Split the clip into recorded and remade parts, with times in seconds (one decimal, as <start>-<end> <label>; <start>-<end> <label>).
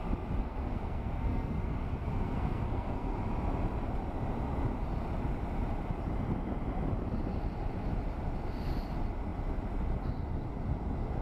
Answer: 0.0-0.4 recorded; 0.4-3.2 remade; 3.2-11.2 recorded